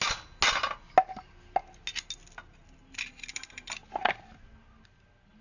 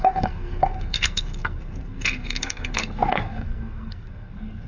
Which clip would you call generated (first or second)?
second